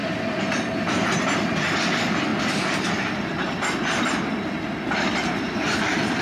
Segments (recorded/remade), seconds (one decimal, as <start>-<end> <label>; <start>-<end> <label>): 0.0-6.2 remade